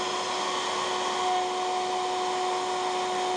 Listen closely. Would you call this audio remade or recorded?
recorded